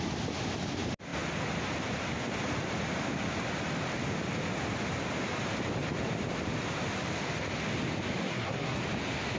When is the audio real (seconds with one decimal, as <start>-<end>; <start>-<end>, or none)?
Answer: 0.0-8.2; 8.8-9.4